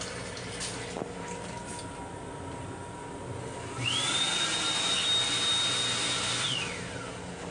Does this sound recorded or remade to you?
recorded